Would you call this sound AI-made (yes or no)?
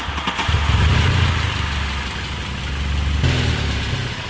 no